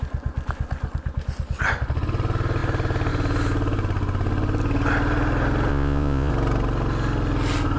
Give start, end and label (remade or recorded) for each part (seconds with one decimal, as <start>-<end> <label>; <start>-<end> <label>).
0.0-5.7 recorded; 5.7-6.3 remade; 6.3-7.8 recorded